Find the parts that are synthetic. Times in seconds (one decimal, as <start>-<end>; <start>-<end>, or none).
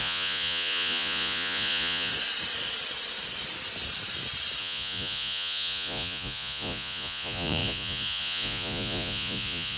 0.0-2.1; 4.6-9.8